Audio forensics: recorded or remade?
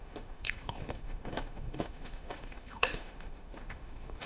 remade